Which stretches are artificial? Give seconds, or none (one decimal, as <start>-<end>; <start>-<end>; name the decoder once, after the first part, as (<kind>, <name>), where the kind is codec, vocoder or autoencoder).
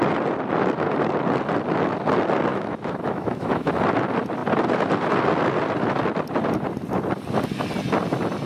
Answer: 2.5-3.7 (autoencoder, DAC-VAE)